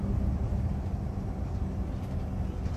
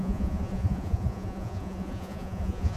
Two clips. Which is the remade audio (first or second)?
second